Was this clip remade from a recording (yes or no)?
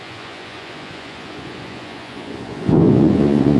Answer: yes